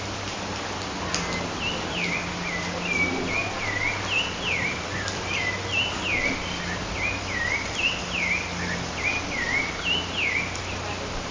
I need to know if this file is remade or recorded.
recorded